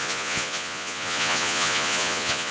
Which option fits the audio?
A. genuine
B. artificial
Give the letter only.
B